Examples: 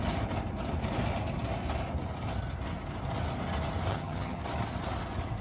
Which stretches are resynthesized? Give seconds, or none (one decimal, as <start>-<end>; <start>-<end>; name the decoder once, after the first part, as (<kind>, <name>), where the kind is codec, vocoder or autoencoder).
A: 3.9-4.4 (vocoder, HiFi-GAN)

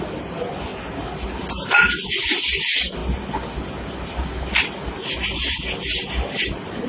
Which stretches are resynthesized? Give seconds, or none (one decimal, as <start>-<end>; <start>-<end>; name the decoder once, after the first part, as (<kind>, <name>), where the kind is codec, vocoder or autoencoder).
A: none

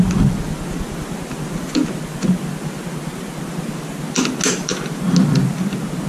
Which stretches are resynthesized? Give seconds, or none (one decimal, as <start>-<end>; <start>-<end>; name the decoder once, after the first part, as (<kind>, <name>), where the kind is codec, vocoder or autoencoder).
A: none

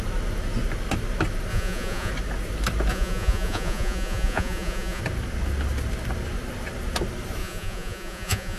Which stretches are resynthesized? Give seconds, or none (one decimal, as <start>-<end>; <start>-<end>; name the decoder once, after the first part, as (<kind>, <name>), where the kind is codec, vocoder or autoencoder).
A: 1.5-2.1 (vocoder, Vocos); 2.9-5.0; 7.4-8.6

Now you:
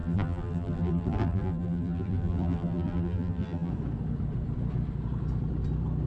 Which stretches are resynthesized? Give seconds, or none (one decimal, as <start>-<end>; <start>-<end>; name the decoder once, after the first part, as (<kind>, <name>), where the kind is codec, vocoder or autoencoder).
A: 0.0-3.7 (vocoder, BigVGAN v2)